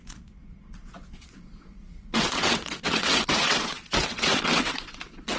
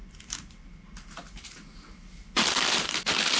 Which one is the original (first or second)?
second